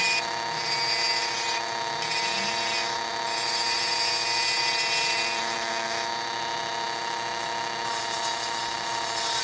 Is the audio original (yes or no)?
yes